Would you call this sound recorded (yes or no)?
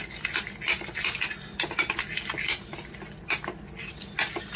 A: yes